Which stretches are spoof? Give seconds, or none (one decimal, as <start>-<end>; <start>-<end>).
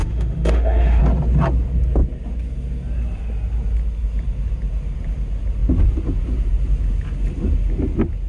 0.0-1.0